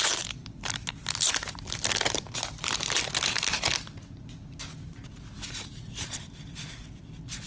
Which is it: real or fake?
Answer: real